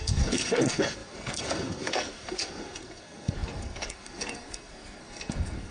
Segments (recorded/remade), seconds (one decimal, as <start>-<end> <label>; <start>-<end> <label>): 0.0-5.7 remade

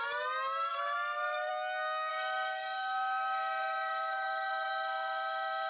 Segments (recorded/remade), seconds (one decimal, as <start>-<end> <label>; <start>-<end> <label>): 0.0-0.7 recorded; 0.7-1.5 remade; 1.5-2.1 recorded; 2.1-5.7 remade

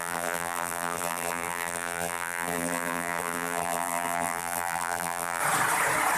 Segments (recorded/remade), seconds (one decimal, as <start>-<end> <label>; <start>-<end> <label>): 0.0-5.4 remade; 5.4-6.2 recorded

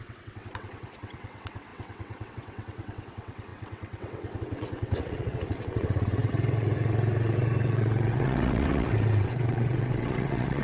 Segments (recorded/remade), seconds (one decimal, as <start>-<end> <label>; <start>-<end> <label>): 0.0-10.6 remade

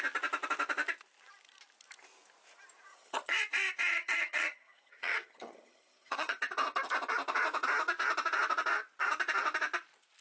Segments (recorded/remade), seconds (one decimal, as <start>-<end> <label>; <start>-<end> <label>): 0.0-2.9 recorded; 2.9-3.4 remade; 3.4-3.9 recorded; 3.9-6.4 remade; 6.4-10.2 recorded

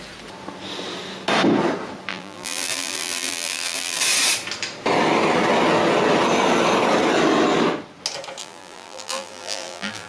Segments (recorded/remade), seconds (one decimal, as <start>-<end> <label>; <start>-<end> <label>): 0.0-2.1 recorded; 2.1-4.0 remade; 4.0-8.4 recorded; 8.4-10.1 remade

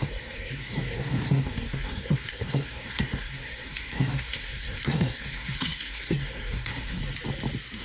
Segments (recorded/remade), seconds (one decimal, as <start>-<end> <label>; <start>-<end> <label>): 0.0-7.0 remade; 7.0-7.8 recorded

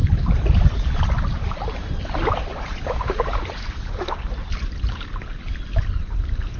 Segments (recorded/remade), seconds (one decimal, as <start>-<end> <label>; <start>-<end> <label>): 0.0-6.6 remade